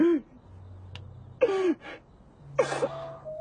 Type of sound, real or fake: real